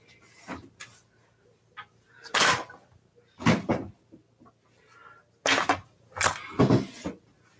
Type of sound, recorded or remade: recorded